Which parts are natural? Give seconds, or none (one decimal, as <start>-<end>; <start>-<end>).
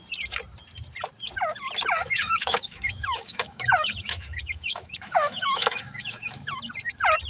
0.0-2.0; 6.4-7.3